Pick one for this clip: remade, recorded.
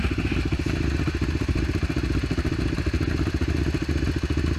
recorded